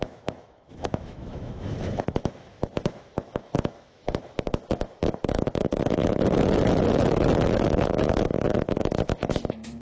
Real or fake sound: fake